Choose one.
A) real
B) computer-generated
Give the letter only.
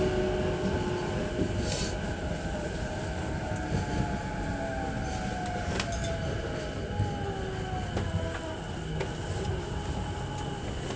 A